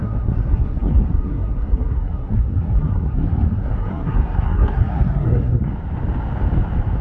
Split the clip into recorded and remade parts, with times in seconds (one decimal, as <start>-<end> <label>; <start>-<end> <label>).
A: 0.0-5.7 remade; 5.7-7.0 recorded